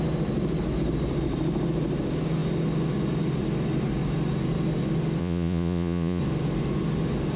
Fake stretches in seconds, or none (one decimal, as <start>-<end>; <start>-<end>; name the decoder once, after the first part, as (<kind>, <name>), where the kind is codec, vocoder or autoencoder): 5.2-6.2 (vocoder, Vocos)